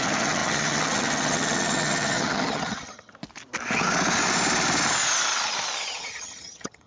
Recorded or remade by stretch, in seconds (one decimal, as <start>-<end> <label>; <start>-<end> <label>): 0.0-3.1 remade; 3.1-5.9 recorded; 5.9-6.9 remade